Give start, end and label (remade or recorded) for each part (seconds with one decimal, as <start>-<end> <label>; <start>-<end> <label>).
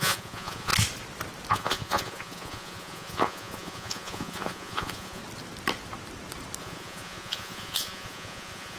0.0-0.7 remade; 0.7-1.5 recorded; 1.5-5.2 remade; 5.2-6.6 recorded; 6.6-8.8 remade